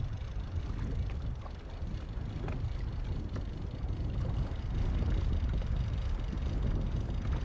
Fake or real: real